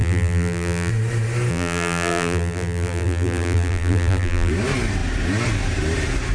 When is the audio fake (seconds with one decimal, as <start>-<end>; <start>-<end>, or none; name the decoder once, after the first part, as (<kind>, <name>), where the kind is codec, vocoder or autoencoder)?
0.0-0.9 (vocoder, BigVGAN v2); 1.5-4.5